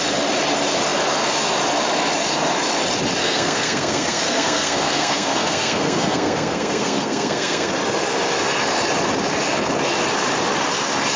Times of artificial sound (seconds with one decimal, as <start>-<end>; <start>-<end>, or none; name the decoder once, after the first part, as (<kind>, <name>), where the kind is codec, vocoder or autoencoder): 3.2-7.7 (codec, SNAC)